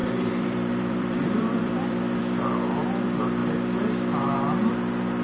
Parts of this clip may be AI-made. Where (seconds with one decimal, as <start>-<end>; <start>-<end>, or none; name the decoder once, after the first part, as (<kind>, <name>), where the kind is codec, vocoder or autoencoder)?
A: 0.0-2.2 (vocoder, BigVGAN v2)